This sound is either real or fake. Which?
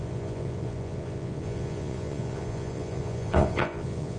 fake